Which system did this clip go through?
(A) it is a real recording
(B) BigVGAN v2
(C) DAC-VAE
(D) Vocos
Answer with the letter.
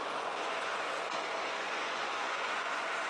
D